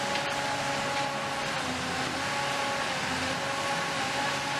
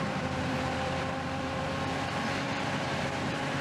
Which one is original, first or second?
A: first